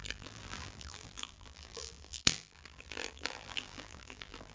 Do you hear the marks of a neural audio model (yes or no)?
yes